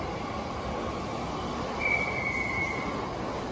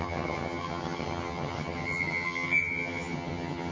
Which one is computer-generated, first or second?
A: second